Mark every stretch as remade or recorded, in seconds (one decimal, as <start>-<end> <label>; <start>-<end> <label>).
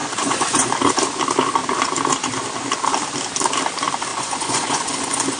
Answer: 0.0-0.7 remade; 0.7-4.1 recorded; 4.1-5.4 remade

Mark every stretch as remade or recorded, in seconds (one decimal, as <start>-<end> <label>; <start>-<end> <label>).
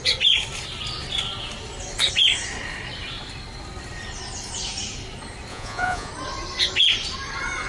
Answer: 0.0-5.5 recorded; 5.5-6.1 remade; 6.1-7.7 recorded